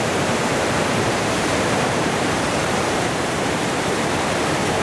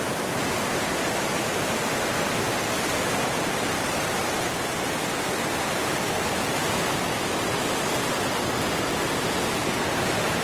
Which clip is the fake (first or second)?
first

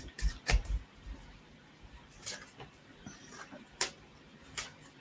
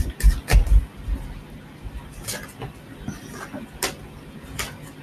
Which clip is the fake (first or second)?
first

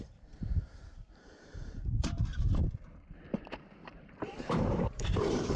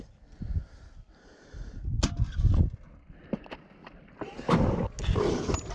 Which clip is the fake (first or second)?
first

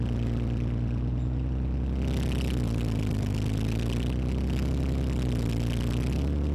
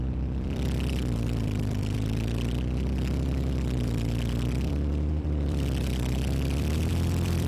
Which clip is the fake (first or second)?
second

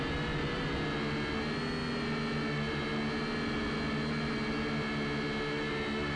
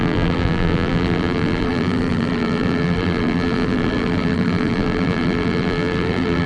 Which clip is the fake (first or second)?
second